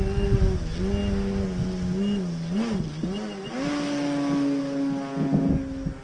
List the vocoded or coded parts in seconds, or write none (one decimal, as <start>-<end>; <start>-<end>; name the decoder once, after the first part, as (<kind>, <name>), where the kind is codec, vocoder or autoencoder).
none